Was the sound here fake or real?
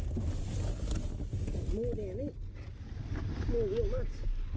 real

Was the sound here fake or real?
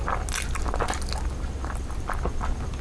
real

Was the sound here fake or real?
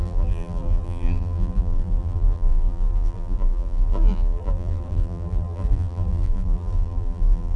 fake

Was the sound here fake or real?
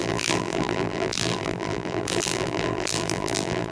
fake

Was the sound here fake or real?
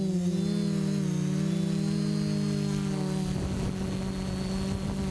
real